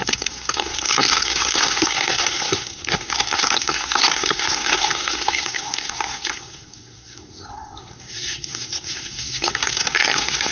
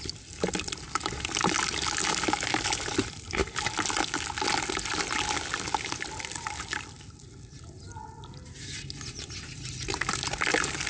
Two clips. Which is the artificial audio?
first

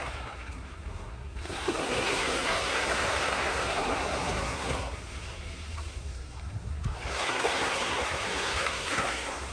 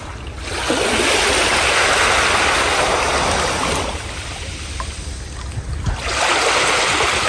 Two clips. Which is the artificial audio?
first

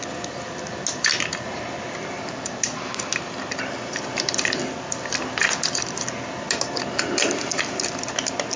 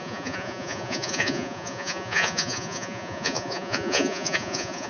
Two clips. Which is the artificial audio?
second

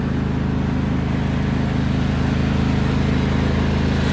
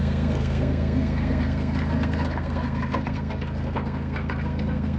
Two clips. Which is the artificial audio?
second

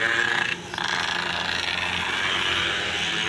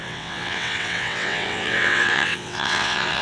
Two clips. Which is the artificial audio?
second